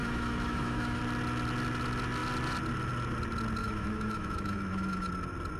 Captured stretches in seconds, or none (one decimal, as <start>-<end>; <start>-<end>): 1.0-3.6; 5.1-5.6